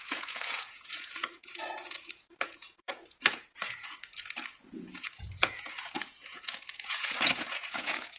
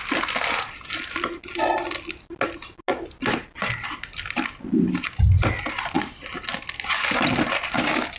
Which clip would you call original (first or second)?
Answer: second